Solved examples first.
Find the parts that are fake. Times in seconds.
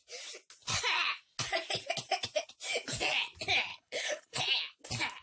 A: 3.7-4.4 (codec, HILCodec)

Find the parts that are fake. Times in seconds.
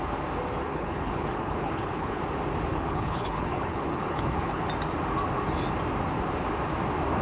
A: 0.6-2.2 (codec, HILCodec); 2.7-4.6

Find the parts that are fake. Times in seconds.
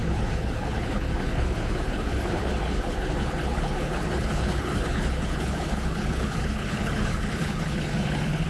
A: 0.0-8.5 (codec, HILCodec)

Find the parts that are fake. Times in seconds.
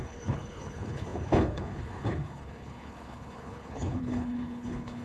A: 0.0-5.0 (codec, HILCodec)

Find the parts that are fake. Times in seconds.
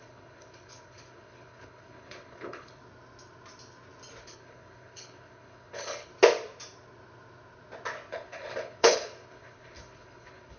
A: 0.0-2.8 (codec, HILCodec); 4.2-6.1; 8.1-10.6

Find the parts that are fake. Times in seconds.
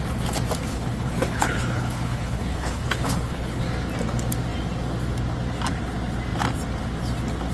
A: 0.7-3.6 (codec, HILCodec)